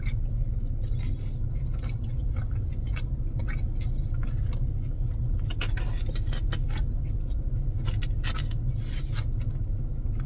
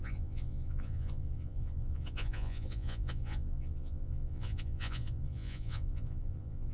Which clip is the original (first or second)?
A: first